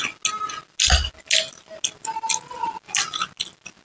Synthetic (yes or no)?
no